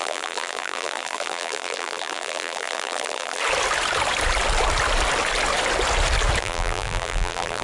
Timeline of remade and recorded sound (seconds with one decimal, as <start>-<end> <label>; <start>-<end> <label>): 0.0-3.4 remade; 3.4-6.4 recorded; 6.4-7.6 remade